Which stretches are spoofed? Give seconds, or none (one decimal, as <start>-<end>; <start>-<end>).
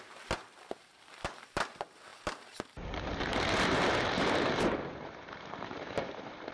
0.0-6.5